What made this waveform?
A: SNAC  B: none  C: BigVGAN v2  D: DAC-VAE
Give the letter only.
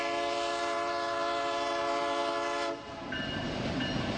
C